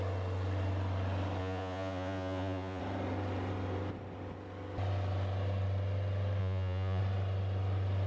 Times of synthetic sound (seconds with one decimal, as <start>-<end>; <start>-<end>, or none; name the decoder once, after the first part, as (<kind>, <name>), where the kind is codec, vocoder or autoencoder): 1.4-2.8 (vocoder, Vocos); 6.4-7.0